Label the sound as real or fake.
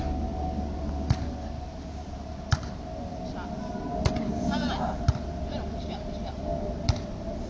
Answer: real